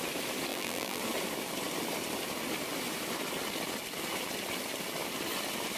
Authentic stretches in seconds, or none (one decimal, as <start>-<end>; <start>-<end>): 0.0-0.5; 1.0-5.8